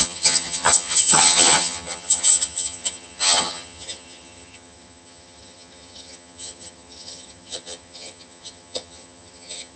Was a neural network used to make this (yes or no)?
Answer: yes